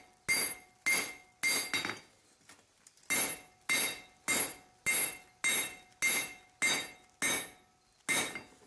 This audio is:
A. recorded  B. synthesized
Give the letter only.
A